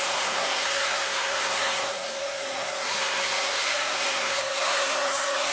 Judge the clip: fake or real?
fake